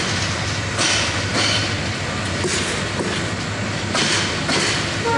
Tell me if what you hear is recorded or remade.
recorded